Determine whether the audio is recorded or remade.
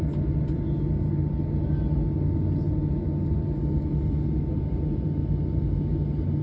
recorded